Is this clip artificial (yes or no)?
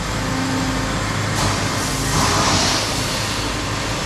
no